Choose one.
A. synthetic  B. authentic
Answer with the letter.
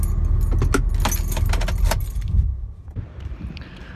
B